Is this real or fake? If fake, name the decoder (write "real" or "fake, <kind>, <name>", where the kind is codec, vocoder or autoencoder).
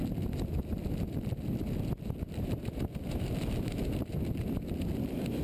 real